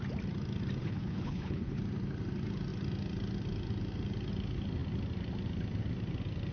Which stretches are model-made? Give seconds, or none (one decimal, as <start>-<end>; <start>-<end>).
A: 0.8-1.8